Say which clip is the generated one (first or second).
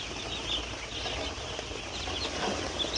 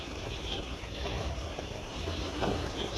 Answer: second